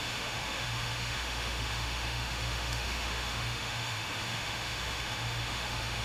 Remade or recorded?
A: remade